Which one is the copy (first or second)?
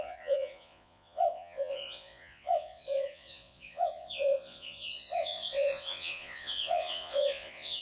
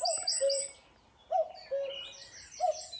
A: first